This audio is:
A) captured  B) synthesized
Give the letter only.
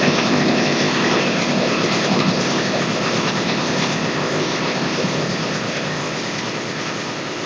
B